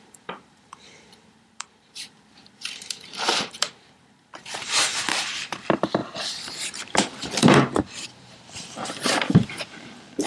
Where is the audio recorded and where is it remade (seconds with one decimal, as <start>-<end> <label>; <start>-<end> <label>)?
0.0-10.3 remade